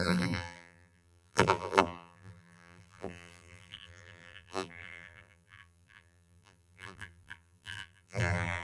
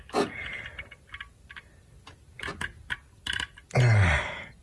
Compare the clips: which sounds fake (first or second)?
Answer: first